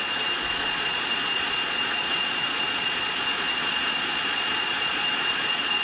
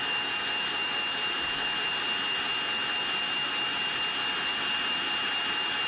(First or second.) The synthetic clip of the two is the first